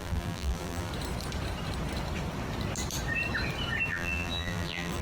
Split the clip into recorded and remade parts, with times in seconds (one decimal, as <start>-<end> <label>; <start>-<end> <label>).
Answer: 0.0-0.9 remade; 0.9-3.9 recorded; 3.9-5.0 remade